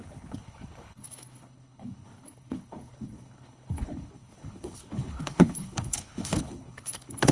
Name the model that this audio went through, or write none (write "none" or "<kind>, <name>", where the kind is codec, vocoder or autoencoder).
codec, HILCodec